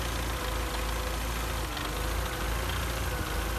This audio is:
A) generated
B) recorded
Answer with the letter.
B